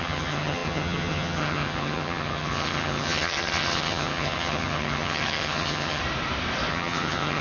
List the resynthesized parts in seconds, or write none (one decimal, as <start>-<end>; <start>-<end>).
0.0-6.0; 6.7-7.4